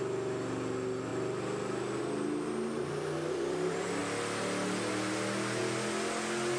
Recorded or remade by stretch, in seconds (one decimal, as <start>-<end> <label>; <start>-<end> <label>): 0.0-1.1 remade; 1.1-2.0 recorded; 2.0-4.0 remade; 4.0-4.9 recorded; 4.9-5.6 remade; 5.6-6.6 recorded